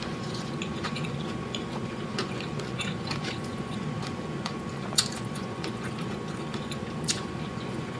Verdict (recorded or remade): remade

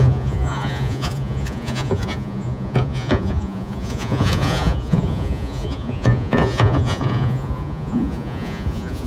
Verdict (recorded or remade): remade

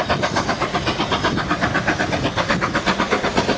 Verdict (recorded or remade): recorded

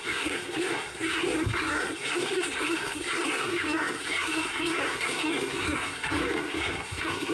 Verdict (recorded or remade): remade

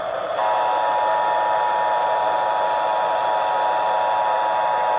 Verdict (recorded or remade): recorded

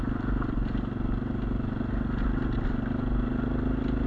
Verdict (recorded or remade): recorded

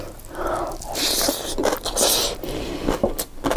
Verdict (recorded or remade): recorded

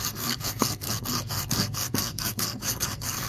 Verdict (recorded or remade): remade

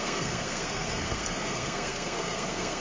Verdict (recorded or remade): remade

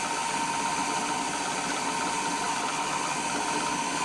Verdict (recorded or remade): recorded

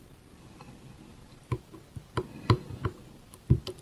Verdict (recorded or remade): recorded